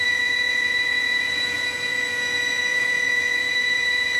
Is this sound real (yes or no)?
no